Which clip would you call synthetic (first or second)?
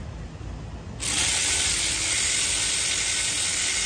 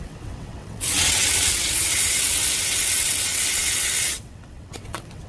second